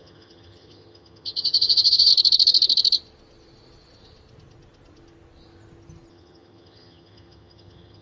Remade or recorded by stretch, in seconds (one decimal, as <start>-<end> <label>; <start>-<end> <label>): 0.0-2.1 remade; 2.1-6.1 recorded; 6.1-8.0 remade